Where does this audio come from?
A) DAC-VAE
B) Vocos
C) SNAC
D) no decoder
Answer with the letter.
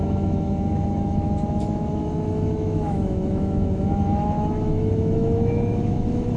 A